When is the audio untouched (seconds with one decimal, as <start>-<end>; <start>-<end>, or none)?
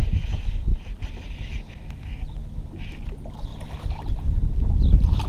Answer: 0.0-5.3